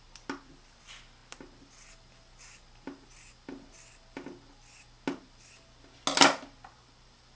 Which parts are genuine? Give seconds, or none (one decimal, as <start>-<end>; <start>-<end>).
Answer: 0.0-7.4